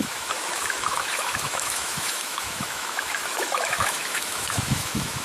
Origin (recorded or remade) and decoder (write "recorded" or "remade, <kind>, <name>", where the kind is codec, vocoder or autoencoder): remade, autoencoder, DAC-VAE